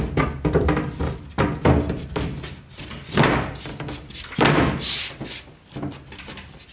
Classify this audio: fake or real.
real